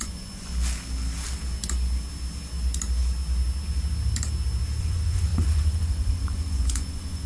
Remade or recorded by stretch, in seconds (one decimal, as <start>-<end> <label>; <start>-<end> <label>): 0.0-0.5 remade; 0.5-4.8 recorded; 4.8-7.3 remade